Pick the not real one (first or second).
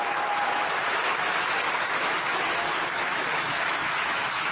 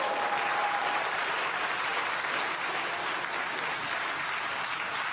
first